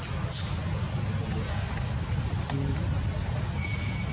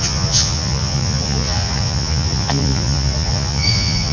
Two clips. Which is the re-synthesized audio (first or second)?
second